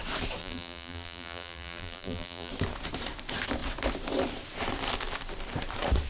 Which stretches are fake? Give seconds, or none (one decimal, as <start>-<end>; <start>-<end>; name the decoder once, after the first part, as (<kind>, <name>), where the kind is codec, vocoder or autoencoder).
0.4-2.5 (vocoder, BigVGAN v2)